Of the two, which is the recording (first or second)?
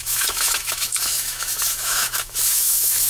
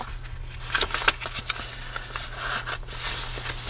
second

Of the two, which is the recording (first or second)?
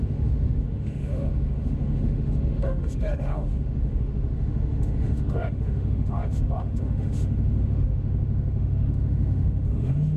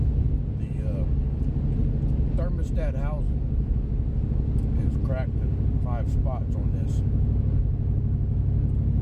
second